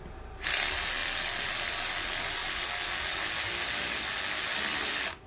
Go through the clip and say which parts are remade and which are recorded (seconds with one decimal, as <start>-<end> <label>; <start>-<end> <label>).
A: 0.0-5.3 recorded